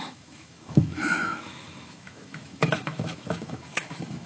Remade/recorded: remade